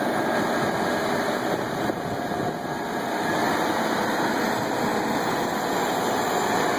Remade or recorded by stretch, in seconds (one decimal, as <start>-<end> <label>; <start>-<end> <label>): 0.0-6.8 recorded